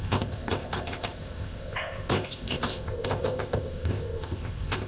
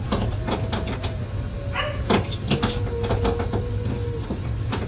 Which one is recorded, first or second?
second